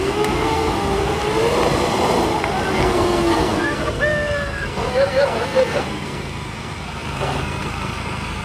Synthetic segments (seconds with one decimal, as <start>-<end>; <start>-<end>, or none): 0.0-1.2; 2.7-8.4